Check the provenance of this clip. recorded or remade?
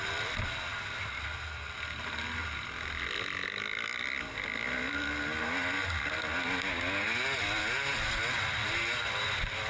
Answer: recorded